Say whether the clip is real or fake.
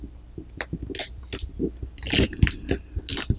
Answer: real